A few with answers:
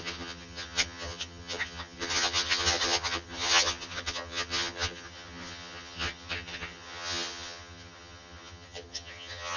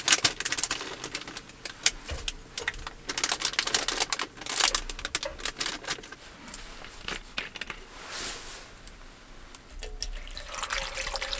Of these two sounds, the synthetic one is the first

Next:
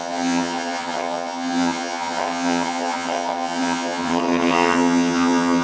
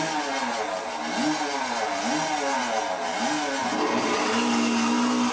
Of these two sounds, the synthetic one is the first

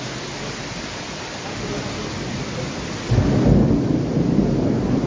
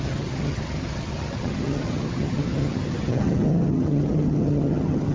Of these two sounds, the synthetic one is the second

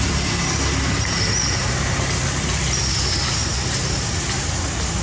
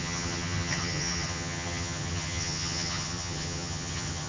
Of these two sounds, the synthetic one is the second